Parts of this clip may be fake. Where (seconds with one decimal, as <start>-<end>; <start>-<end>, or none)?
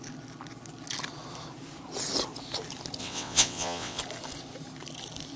3.0-4.0